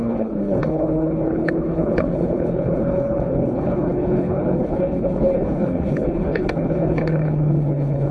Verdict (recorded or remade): remade